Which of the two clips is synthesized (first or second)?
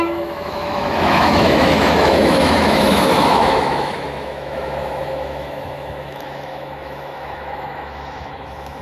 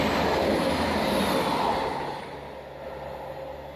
first